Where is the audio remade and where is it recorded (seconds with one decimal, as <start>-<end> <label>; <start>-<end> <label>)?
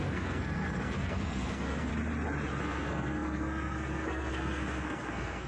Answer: 0.0-1.9 remade; 1.9-2.6 recorded; 2.6-5.5 remade